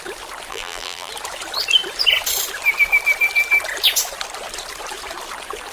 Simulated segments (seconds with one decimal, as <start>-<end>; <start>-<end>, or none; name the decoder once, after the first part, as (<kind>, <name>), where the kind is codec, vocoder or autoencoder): 0.5-1.1 (vocoder, BigVGAN v2)